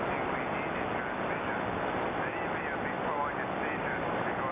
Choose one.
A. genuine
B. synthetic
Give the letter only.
A